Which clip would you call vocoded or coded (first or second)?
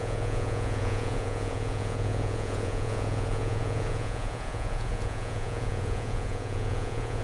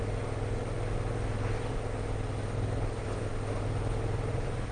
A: first